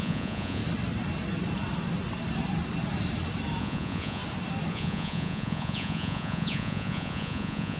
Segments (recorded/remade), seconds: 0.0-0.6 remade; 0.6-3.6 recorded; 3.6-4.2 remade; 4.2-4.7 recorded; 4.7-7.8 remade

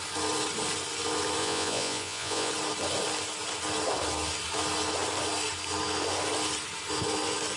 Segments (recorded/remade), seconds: 0.0-1.4 recorded; 1.4-2.5 remade; 2.5-7.6 recorded

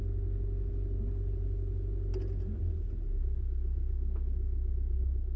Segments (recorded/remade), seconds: 0.0-5.4 recorded

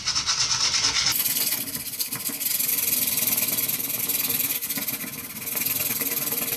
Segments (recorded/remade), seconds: 0.0-6.6 recorded

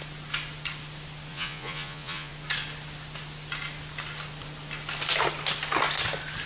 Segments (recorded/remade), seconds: 0.0-1.3 recorded; 1.3-2.3 remade; 2.3-6.5 recorded

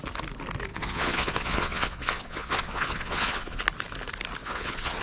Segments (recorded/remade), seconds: 0.0-0.7 recorded; 0.7-3.6 remade; 3.6-4.4 recorded; 4.4-5.0 remade

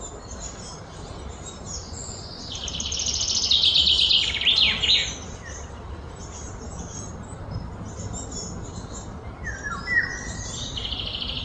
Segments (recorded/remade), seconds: 0.0-1.8 recorded; 1.8-2.4 remade; 2.4-11.4 recorded